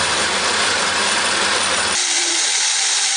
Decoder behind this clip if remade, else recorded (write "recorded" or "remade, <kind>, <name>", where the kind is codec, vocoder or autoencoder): recorded